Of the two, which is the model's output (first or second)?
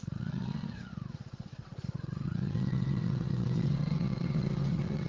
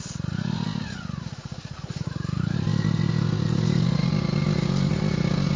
first